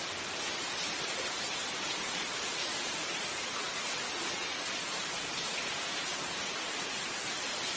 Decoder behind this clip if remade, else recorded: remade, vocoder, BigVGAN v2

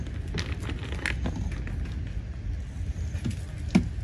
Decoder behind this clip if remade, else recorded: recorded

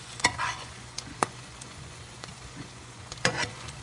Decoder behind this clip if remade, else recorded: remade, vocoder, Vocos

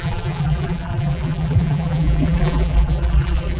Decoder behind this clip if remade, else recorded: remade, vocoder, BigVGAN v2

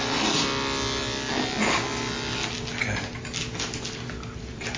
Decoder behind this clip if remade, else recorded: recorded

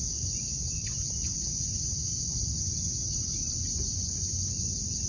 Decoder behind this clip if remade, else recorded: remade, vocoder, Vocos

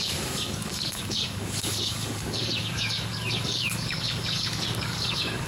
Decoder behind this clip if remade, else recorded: remade, codec, DAC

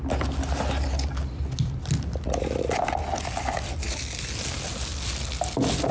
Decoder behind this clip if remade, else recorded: recorded